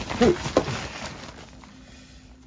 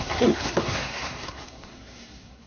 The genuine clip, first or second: first